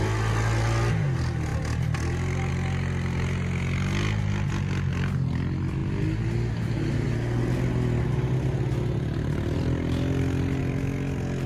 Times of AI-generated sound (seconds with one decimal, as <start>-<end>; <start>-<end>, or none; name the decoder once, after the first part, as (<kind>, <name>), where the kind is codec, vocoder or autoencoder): none